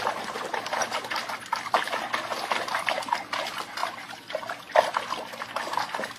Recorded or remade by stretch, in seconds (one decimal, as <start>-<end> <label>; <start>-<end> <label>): 0.0-6.2 recorded